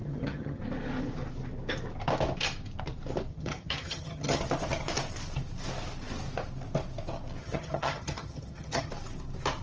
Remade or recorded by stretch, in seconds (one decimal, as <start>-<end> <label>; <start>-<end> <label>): 0.0-0.6 remade; 0.6-3.3 recorded; 3.3-4.4 remade; 4.4-7.4 recorded; 7.4-8.9 remade; 8.9-9.6 recorded